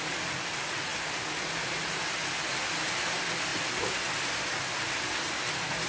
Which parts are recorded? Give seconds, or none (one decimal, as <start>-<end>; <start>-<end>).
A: 0.0-5.9